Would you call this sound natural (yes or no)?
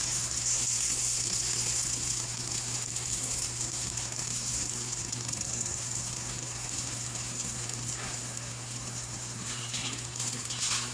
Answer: no